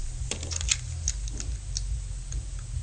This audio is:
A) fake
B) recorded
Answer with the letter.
B